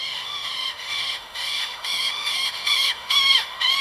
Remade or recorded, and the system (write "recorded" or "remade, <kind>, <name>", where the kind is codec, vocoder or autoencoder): remade, autoencoder, DAC-VAE